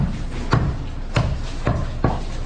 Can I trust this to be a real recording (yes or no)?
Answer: yes